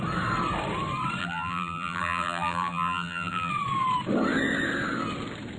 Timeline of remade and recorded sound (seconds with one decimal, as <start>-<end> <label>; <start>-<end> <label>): 0.0-1.2 recorded; 1.2-3.5 remade; 3.5-5.6 recorded

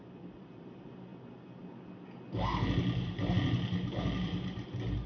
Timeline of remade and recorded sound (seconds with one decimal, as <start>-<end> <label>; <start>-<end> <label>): 0.0-1.1 remade; 1.1-4.2 recorded; 4.2-5.1 remade

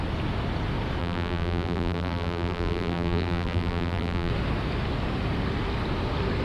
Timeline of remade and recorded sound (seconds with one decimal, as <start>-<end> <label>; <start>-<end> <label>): 0.0-1.0 recorded; 1.0-4.3 remade; 4.3-6.4 recorded

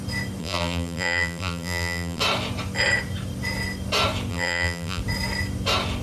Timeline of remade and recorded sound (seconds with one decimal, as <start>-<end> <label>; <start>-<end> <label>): 0.0-0.4 recorded; 0.4-2.2 remade; 2.2-4.3 recorded; 4.3-5.0 remade; 5.0-6.0 recorded